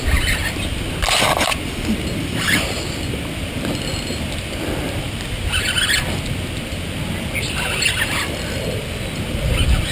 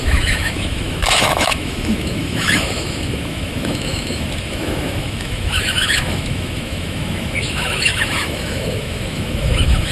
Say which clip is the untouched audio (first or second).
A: first